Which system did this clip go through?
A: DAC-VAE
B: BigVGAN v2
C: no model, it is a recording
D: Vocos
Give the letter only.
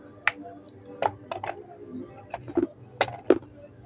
C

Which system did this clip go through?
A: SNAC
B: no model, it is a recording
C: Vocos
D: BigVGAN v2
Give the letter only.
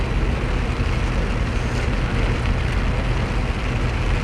B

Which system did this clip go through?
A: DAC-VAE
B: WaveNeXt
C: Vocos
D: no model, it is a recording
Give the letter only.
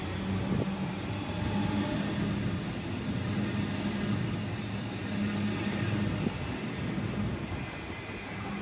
D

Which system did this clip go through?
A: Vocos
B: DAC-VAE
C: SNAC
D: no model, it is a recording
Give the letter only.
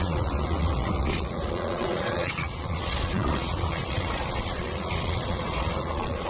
A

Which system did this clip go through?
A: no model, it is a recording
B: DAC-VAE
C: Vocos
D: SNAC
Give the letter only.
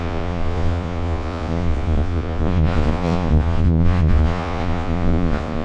C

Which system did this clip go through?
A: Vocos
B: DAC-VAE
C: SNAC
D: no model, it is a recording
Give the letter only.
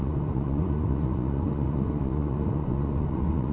A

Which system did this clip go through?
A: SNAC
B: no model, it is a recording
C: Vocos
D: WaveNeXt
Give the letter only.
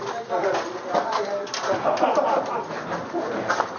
B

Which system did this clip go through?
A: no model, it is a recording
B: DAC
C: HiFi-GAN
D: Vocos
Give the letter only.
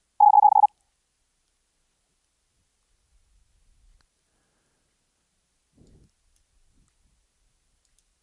A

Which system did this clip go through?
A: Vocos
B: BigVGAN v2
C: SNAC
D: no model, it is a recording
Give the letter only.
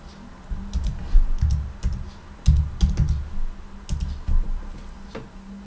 D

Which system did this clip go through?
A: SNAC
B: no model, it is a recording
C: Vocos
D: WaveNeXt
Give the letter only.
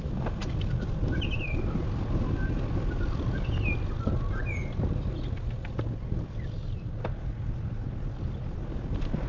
B